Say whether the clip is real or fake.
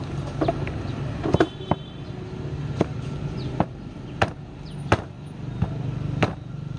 real